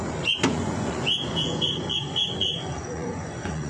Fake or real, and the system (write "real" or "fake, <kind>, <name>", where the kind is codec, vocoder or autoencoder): fake, vocoder, Vocos